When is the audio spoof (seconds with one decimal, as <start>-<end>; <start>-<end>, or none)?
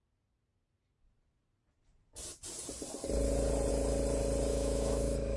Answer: 4.5-5.4